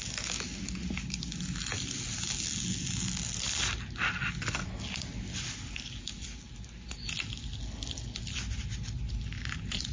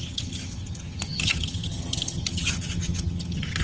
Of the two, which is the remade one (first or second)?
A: second